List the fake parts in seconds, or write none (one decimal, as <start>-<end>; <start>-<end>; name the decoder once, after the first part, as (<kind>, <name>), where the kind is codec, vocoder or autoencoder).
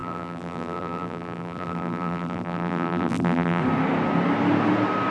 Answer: 0.0-3.6 (vocoder, BigVGAN v2)